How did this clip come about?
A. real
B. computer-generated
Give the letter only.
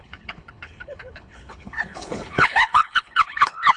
B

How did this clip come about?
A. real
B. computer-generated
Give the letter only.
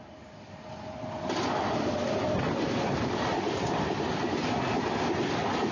A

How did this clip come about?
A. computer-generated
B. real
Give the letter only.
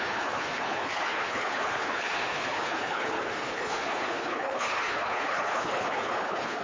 A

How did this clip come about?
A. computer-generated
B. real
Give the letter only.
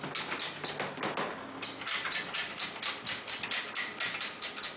B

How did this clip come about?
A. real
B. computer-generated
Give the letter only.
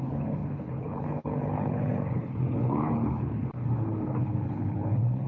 B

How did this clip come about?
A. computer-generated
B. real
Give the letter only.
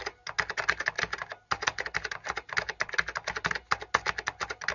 B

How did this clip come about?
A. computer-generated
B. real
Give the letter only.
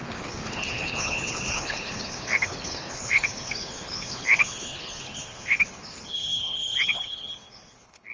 A